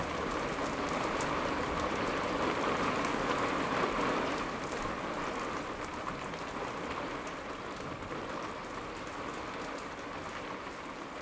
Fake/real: real